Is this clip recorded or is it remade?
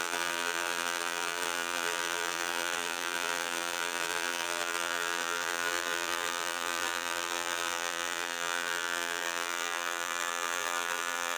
remade